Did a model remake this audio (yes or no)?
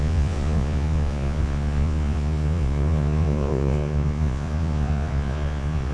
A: yes